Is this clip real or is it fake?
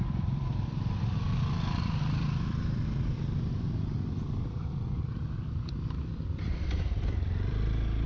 fake